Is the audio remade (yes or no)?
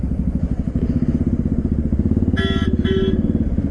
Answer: no